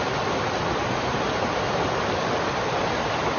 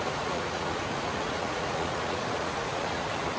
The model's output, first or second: second